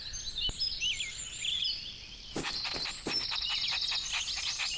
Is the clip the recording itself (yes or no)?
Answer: yes